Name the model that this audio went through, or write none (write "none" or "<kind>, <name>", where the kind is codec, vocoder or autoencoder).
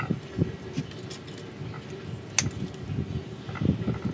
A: none